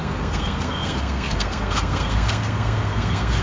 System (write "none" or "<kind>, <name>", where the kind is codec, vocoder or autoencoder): codec, SNAC